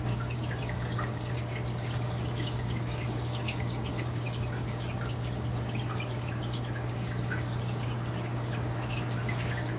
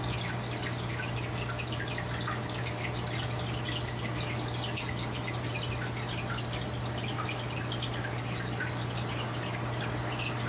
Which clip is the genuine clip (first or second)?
second